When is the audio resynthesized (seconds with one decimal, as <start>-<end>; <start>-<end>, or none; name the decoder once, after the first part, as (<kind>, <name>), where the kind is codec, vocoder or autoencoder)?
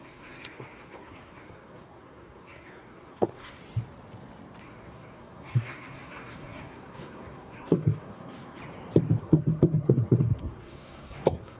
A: 0.0-3.6 (codec, SNAC); 4.6-8.6; 9.2-11.6